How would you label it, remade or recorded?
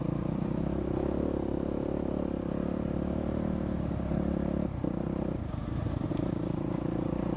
remade